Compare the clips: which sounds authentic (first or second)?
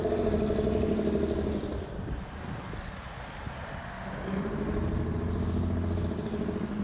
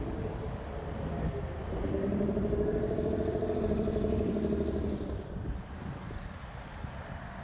first